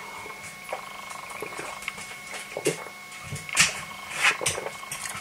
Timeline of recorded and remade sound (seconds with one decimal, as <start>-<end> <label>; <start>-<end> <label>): 0.0-1.5 recorded; 1.5-2.8 remade; 2.8-3.5 recorded; 3.5-4.3 remade; 4.3-5.2 recorded